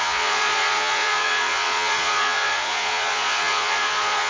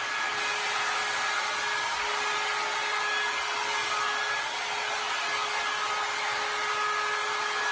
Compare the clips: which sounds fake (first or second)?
first